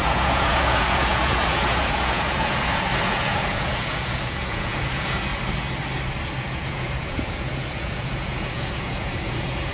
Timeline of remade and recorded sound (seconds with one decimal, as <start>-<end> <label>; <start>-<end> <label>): 0.0-5.3 remade; 5.3-6.4 recorded; 6.4-9.7 remade